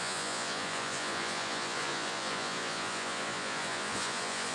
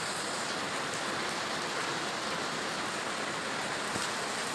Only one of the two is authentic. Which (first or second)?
second